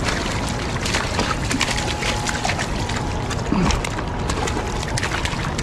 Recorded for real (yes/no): yes